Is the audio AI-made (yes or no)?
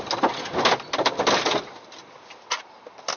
no